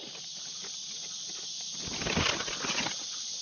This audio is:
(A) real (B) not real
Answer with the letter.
A